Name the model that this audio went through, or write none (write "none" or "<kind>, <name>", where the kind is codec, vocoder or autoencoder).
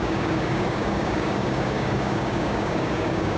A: codec, DAC